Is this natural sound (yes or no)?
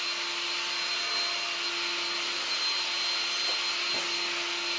yes